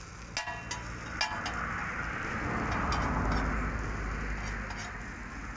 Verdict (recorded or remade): recorded